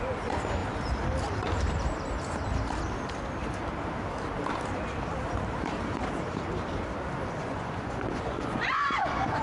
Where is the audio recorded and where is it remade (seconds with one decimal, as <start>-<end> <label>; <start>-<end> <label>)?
0.0-7.4 recorded; 7.4-9.4 remade